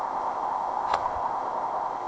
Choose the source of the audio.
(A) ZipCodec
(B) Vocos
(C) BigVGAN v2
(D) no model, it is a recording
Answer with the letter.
A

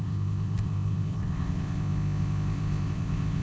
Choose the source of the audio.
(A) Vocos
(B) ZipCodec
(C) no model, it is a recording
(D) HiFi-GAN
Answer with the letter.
B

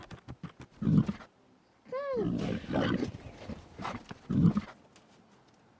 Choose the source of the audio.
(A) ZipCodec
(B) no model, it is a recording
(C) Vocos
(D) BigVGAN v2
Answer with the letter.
B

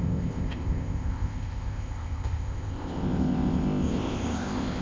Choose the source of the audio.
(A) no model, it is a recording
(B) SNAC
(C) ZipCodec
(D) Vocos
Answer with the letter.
C